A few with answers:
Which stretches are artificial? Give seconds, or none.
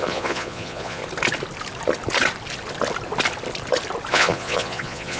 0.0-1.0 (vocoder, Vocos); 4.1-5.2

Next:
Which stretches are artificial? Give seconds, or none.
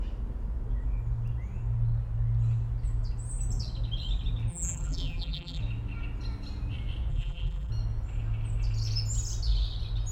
4.5-5.6 (vocoder, BigVGAN v2); 7.1-7.7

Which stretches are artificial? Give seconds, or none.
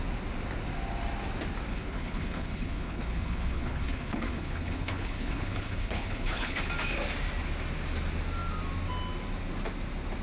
1.7-6.7 (codec, HILCodec)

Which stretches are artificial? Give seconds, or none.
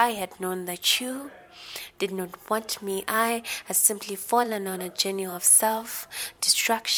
2.3-6.5 (vocoder, BigVGAN v2)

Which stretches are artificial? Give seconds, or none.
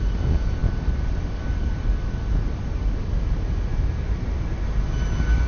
none